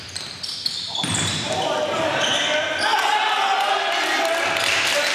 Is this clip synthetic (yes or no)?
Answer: no